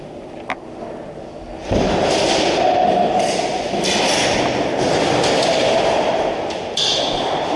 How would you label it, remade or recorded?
recorded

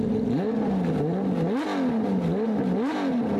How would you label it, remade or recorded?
recorded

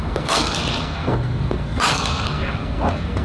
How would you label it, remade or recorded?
remade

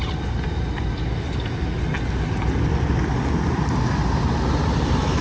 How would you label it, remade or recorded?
recorded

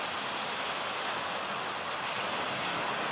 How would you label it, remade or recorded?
recorded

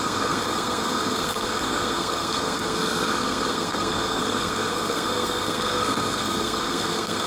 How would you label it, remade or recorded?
remade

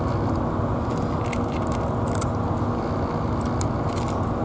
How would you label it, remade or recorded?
recorded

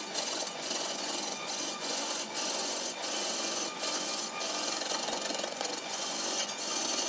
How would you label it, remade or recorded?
remade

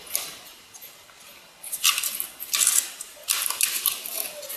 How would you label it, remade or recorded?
recorded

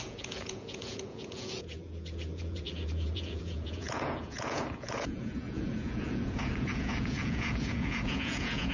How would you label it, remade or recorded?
remade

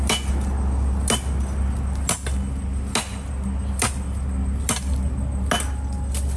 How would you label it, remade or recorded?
recorded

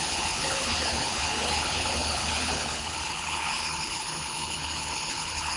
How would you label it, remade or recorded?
remade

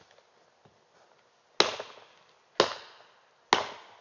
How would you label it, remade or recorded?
recorded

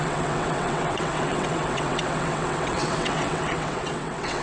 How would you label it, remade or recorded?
remade